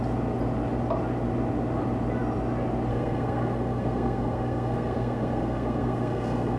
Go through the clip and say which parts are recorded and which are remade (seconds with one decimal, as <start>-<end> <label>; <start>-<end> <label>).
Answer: 0.0-2.9 recorded; 2.9-6.6 remade

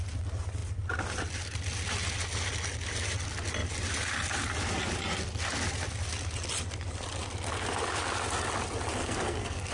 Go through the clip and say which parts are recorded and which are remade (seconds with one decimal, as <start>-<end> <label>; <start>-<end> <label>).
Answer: 0.0-9.0 recorded; 9.0-9.7 remade

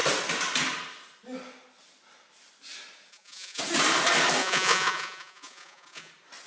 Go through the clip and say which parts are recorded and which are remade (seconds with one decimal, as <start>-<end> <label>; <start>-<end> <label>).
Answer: 0.0-3.1 recorded; 3.1-3.6 remade; 3.6-4.4 recorded; 4.4-6.1 remade; 6.1-6.5 recorded

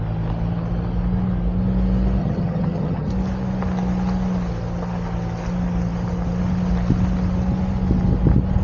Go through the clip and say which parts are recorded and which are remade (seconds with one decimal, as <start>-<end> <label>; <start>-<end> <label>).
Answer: 0.0-2.2 recorded; 2.2-3.1 remade; 3.1-8.6 recorded

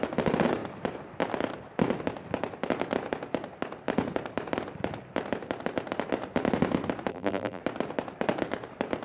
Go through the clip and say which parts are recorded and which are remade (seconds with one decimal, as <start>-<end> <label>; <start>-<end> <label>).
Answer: 0.0-7.1 recorded; 7.1-7.6 remade; 7.6-9.0 recorded

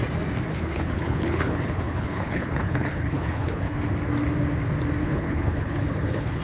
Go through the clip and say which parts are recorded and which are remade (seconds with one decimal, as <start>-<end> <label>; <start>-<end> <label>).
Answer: 0.0-0.5 recorded; 0.5-3.8 remade; 3.8-5.0 recorded; 5.0-6.4 remade

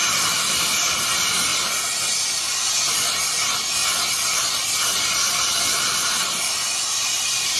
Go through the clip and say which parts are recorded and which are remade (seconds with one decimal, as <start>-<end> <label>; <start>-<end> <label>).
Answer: 0.0-1.0 remade; 1.0-7.6 recorded